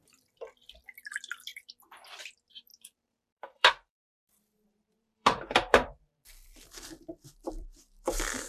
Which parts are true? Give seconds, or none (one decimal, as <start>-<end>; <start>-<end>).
none